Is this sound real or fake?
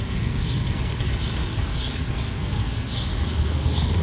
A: fake